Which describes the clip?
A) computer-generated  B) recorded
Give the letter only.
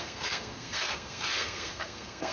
A